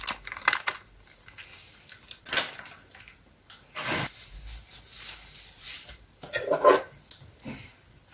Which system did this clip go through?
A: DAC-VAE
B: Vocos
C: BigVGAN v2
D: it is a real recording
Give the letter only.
D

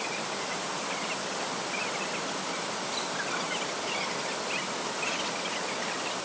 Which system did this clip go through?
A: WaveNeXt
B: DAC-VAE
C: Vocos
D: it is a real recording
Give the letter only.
D